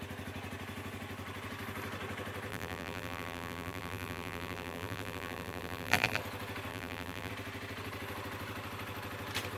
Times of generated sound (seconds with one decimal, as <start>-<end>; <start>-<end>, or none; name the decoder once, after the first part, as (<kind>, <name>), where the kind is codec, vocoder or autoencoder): 2.5-6.2 (vocoder, BigVGAN v2); 6.7-7.3